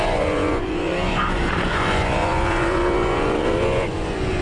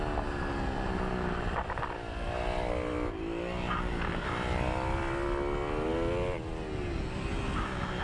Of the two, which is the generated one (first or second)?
first